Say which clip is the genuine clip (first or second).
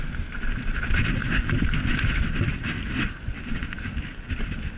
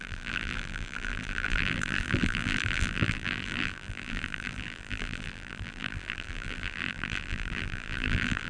first